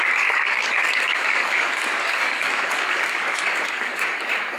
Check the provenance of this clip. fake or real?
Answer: fake